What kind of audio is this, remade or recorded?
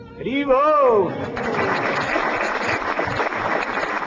recorded